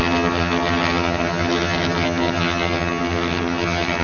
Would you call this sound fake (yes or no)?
yes